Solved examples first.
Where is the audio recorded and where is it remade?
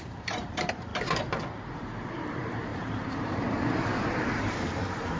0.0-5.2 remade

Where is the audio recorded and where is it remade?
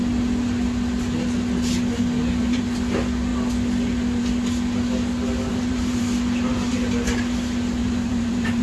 0.0-5.5 recorded; 5.5-6.0 remade; 6.0-7.8 recorded; 7.8-8.6 remade